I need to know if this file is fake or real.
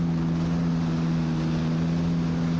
real